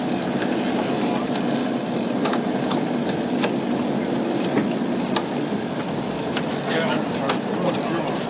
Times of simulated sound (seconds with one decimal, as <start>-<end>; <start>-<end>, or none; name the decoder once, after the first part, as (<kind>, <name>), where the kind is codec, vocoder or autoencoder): none